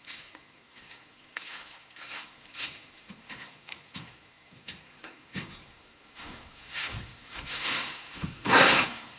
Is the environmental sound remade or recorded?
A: remade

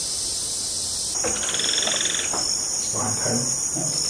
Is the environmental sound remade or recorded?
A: recorded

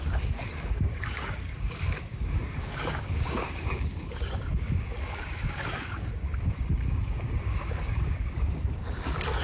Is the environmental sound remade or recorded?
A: remade